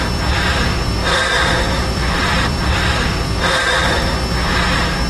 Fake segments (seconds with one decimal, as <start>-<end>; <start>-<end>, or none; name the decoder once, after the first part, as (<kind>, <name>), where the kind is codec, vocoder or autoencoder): 1.0-4.1 (vocoder, BigVGAN v2)